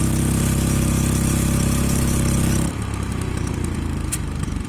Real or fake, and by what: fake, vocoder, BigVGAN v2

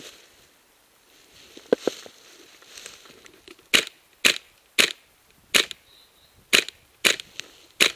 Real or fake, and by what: real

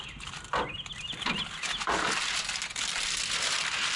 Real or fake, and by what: real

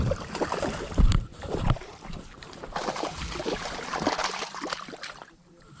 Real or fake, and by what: fake, vocoder, BigVGAN v2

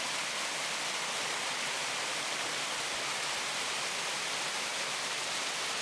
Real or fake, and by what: real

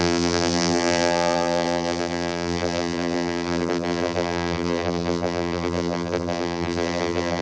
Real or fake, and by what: fake, vocoder, BigVGAN v2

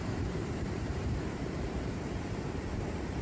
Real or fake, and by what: fake, vocoder, BigVGAN v2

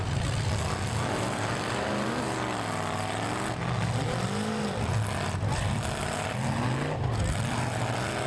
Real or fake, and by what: real